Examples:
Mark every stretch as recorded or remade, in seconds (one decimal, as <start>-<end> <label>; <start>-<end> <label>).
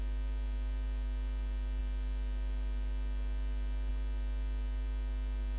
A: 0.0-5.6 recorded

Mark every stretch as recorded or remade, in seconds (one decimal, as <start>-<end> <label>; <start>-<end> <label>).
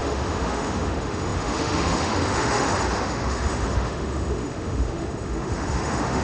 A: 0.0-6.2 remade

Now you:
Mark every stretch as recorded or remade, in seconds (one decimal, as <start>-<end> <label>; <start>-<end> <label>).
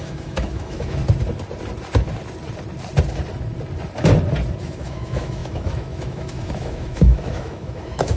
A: 0.0-1.0 remade; 1.0-4.6 recorded; 4.6-8.2 remade